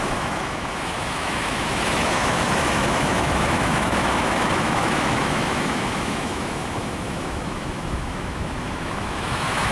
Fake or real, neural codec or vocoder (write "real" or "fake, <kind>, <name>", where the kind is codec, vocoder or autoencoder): fake, autoencoder, DAC-VAE